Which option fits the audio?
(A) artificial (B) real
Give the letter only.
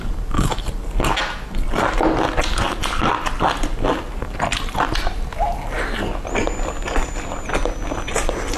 B